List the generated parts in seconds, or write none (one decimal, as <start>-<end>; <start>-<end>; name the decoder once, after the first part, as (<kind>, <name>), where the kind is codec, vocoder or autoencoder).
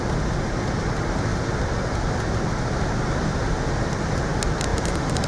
4.7-5.3 (vocoder, BigVGAN v2)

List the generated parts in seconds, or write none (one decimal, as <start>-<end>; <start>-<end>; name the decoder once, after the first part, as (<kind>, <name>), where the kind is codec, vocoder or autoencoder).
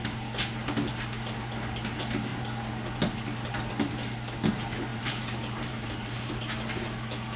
4.9-6.3 (vocoder, BigVGAN v2)